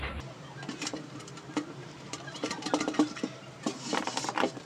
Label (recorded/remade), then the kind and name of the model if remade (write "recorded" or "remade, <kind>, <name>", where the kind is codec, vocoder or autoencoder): remade, vocoder, BigVGAN v2